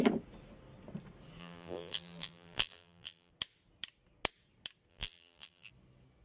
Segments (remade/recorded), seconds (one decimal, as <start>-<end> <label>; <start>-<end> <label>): 0.0-1.4 recorded; 1.4-3.3 remade; 3.3-4.9 recorded; 4.9-5.7 remade; 5.7-6.2 recorded